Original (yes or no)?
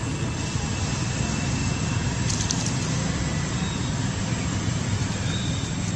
yes